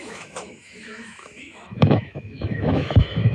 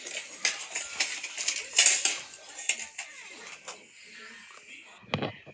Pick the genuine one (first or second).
second